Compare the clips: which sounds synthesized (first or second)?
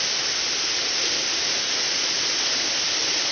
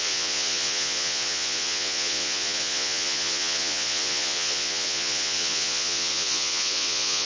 second